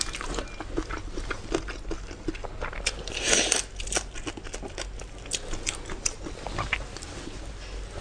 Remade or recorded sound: recorded